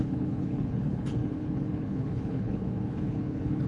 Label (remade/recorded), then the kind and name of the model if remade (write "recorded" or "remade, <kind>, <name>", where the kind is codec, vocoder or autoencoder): remade, codec, HILCodec